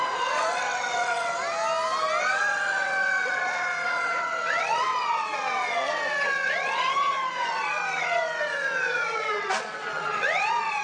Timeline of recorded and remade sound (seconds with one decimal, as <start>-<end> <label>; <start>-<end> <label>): 0.0-1.3 remade; 1.3-2.2 recorded; 2.2-10.8 remade